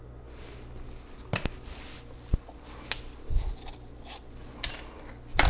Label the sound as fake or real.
real